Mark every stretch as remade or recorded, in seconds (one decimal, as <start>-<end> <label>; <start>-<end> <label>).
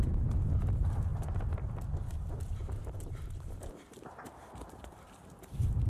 0.0-5.9 remade